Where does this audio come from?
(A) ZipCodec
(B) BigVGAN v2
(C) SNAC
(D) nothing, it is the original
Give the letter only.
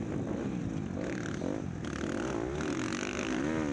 D